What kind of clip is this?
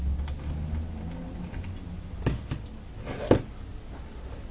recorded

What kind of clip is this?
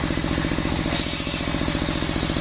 recorded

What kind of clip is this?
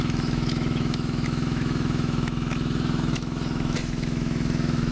remade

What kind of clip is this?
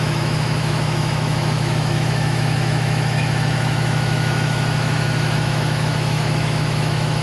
remade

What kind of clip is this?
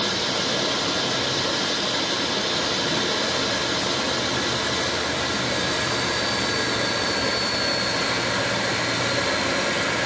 recorded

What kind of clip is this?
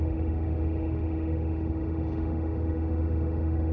remade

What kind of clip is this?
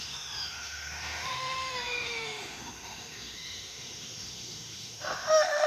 remade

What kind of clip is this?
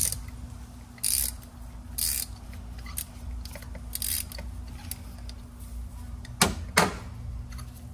recorded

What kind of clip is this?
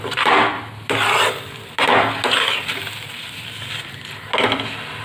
recorded